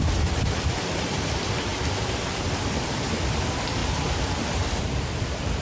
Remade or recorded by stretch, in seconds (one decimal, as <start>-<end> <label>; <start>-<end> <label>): 0.0-1.7 remade; 1.7-2.3 recorded; 2.3-5.6 remade

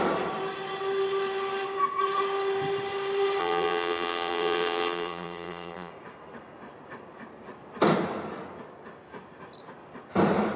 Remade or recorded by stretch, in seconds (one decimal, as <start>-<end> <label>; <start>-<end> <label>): 0.0-3.4 recorded; 3.4-5.9 remade; 5.9-10.6 recorded

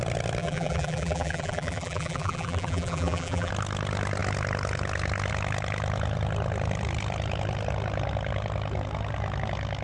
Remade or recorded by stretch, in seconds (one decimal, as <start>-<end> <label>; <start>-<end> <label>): 0.0-0.4 recorded; 0.4-3.5 remade; 3.5-9.8 recorded

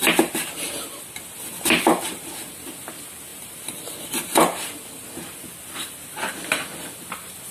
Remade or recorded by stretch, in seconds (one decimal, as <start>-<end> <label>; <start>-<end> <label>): 0.0-7.5 recorded